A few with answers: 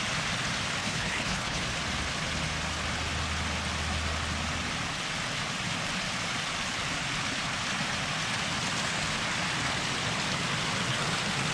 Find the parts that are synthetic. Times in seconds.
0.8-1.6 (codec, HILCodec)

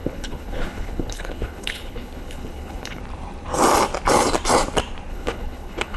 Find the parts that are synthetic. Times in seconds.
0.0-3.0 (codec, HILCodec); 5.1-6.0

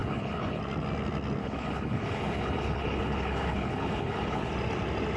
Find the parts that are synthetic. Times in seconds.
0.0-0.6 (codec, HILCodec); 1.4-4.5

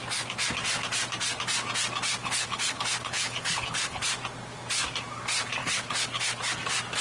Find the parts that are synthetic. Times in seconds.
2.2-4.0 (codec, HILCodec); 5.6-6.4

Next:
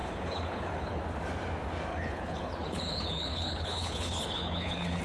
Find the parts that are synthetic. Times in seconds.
0.0-1.0 (codec, HILCodec); 1.9-5.0

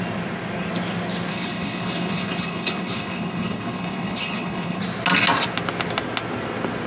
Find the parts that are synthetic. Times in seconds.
1.3-4.8 (codec, HILCodec)

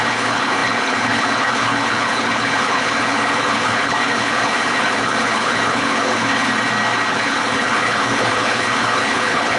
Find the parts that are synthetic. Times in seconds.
0.0-6.5 (codec, HILCodec); 7.1-9.6